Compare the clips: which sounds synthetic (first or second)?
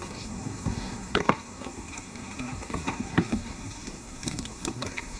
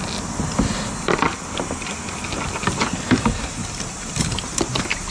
first